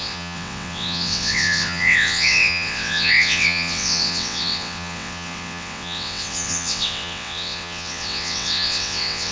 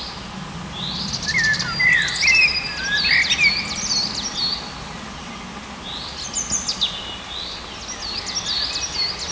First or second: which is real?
second